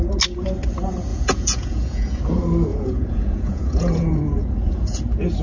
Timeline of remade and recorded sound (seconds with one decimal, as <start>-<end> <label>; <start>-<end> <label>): 0.0-1.1 recorded; 1.1-2.2 remade; 2.2-2.7 recorded; 2.7-5.0 remade; 5.0-5.4 recorded